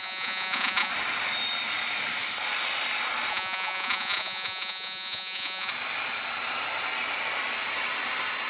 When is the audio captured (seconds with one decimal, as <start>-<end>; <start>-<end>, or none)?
0.9-3.3; 5.7-8.5